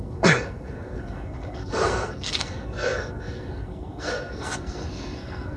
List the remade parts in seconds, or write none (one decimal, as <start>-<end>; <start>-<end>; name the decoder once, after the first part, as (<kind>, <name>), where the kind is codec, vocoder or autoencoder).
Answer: 0.0-5.6 (codec, SNAC)